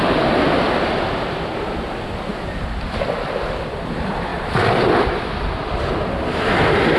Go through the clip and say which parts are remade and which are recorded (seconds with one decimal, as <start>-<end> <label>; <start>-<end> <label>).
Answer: 0.0-7.0 remade